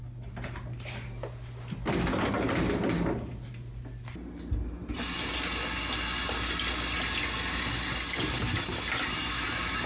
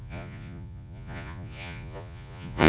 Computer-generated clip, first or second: second